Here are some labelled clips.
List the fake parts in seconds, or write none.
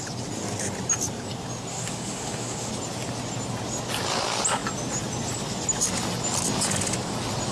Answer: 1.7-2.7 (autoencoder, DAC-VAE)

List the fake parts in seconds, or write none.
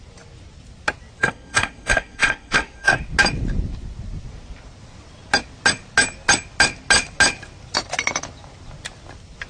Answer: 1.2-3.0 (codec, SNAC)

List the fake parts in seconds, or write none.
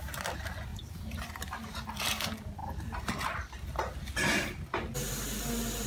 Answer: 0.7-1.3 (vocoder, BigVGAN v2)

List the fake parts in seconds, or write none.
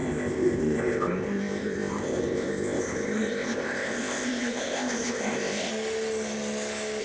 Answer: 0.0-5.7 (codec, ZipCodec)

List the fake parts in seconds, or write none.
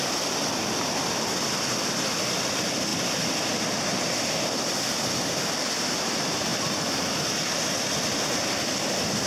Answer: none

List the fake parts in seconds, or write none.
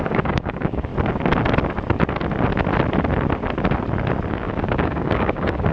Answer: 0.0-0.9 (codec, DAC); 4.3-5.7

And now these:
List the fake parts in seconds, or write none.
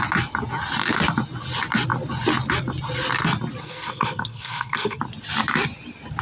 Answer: 3.6-5.0 (codec, SNAC)